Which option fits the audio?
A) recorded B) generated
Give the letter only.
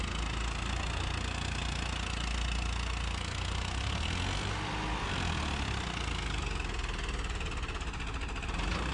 A